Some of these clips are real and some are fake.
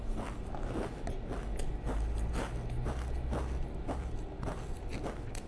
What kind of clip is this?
real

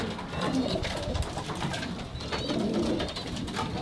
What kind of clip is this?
real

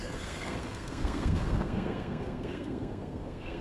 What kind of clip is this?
fake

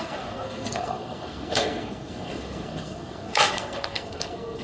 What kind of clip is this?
fake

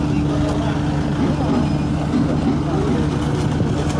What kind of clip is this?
real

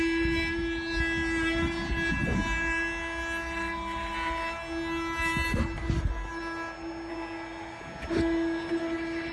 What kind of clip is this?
real